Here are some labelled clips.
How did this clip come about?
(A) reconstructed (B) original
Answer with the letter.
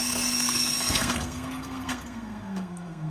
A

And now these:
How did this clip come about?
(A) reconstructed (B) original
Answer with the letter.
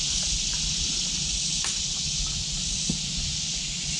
B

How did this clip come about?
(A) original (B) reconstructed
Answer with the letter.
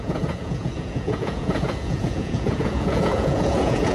B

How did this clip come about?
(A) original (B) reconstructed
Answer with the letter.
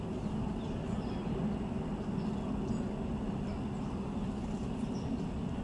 A